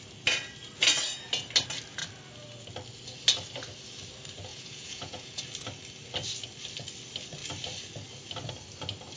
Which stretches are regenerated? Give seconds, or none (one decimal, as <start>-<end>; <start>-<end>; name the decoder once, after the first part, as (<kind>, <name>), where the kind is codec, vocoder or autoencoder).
4.5-5.4 (vocoder, Vocos)